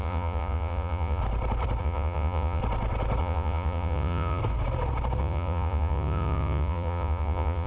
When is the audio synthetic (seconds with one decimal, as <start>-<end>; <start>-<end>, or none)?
0.0-1.2; 1.8-2.6; 3.2-4.4; 5.2-7.7